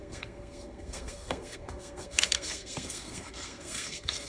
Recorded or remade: remade